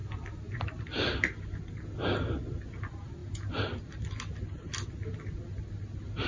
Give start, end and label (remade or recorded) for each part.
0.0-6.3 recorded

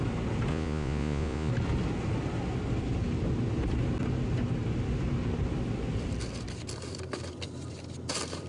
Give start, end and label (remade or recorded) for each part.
0.0-0.5 recorded; 0.5-1.5 remade; 1.5-8.5 recorded

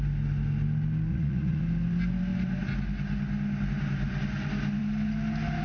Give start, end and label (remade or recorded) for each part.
0.0-1.1 recorded; 1.1-1.6 remade; 1.6-5.6 recorded

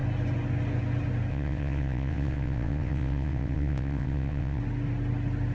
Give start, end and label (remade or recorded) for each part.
0.0-1.3 recorded; 1.3-4.6 remade; 4.6-5.5 recorded

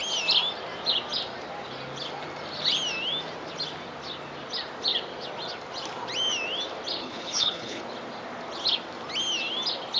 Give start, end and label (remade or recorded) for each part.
0.0-7.0 recorded; 7.0-7.8 remade; 7.8-10.0 recorded

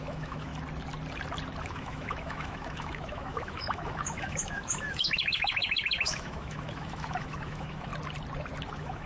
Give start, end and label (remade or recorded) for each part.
0.0-0.5 remade; 0.5-1.6 recorded; 1.6-7.9 remade; 7.9-8.7 recorded; 8.7-9.1 remade

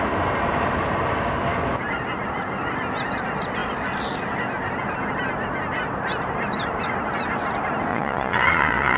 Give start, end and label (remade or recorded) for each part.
0.0-7.9 recorded; 7.9-9.0 remade

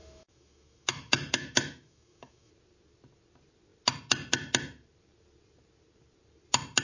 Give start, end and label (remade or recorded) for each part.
0.0-2.5 remade; 2.5-6.8 recorded